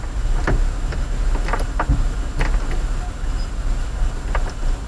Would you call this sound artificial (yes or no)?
no